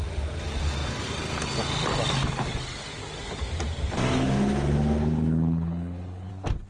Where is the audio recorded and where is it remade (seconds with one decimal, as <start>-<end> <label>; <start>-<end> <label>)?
0.0-5.0 recorded; 5.0-6.3 remade; 6.3-6.7 recorded